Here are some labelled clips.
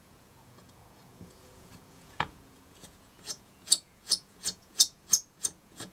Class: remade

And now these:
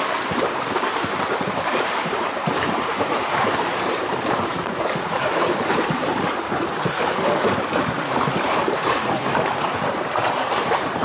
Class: remade